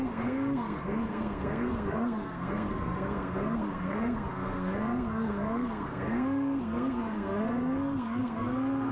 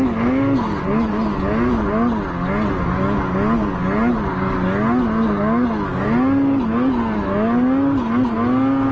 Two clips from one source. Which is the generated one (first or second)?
first